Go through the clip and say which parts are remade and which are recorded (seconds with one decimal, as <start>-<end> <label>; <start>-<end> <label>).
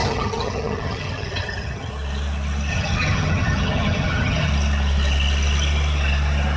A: 0.0-1.9 remade; 1.9-2.7 recorded; 2.7-4.5 remade; 4.5-6.6 recorded